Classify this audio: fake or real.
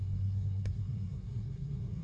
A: fake